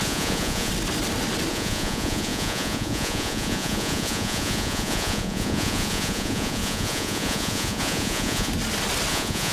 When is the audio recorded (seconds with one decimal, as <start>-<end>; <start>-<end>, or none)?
0.7-1.5; 8.5-9.1